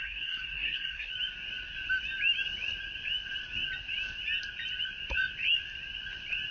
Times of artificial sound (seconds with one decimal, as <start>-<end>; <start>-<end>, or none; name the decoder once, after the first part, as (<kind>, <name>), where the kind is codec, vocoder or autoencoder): 0.0-1.1 (codec, SNAC)

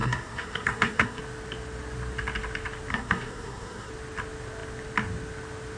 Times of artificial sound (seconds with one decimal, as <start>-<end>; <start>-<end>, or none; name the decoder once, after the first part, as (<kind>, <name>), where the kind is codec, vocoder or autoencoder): 0.0-1.2 (codec, SNAC); 2.9-3.9

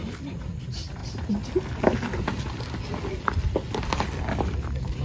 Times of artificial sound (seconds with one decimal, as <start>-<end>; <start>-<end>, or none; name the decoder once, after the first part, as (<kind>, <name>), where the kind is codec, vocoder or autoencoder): 0.0-0.6 (vocoder, BigVGAN v2)